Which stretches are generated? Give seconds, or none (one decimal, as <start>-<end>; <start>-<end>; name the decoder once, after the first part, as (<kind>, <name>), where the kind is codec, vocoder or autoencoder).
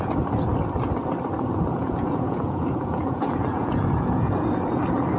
1.7-4.6 (vocoder, Vocos)